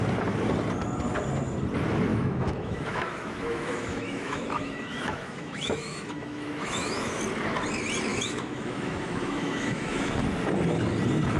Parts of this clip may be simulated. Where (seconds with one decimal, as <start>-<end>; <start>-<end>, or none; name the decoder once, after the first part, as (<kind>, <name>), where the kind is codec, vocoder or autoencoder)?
2.1-7.2 (autoencoder, DAC-VAE); 8.1-10.1